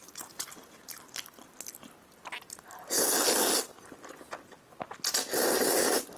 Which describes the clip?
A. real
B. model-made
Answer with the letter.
A